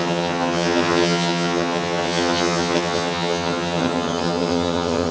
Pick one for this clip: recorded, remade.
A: remade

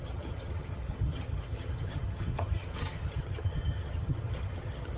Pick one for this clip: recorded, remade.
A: remade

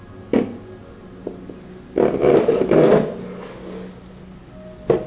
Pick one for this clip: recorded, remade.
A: recorded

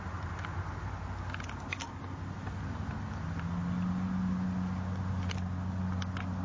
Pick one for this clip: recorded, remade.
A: recorded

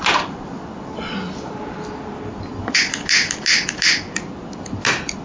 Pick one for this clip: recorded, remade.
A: recorded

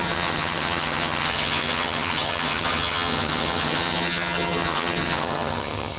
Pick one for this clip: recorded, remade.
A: remade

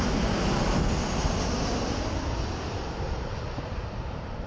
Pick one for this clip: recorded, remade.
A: recorded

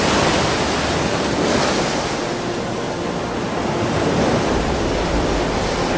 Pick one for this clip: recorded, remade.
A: recorded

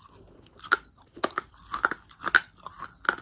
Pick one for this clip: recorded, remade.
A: recorded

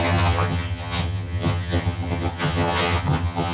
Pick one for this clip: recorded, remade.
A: remade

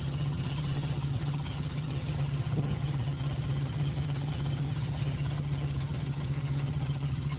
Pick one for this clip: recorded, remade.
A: remade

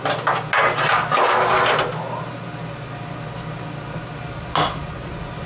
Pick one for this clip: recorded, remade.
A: recorded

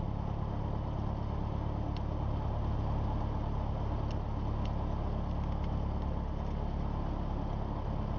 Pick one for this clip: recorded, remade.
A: recorded